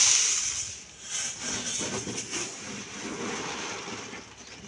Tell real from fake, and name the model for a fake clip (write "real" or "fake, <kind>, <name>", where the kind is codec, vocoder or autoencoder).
real